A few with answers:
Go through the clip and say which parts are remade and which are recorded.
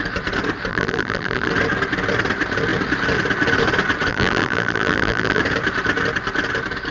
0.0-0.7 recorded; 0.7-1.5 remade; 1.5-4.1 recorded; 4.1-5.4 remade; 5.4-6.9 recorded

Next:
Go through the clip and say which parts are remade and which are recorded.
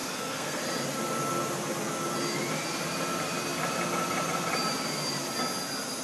0.0-0.6 remade; 0.6-6.0 recorded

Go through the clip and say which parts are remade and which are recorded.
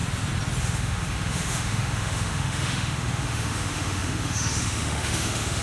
0.0-0.6 recorded; 0.6-5.6 remade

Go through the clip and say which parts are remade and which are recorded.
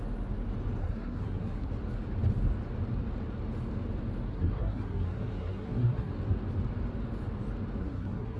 0.0-0.8 recorded; 0.8-1.7 remade; 1.7-4.3 recorded; 4.3-6.1 remade; 6.1-7.8 recorded; 7.8-8.4 remade